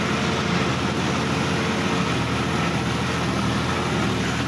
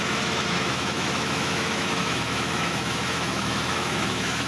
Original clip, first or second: first